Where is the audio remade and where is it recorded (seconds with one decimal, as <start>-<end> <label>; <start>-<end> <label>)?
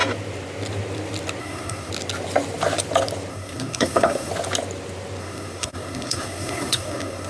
0.0-1.4 recorded; 1.4-1.9 remade; 1.9-3.3 recorded; 3.3-4.3 remade; 4.3-5.2 recorded; 5.2-7.3 remade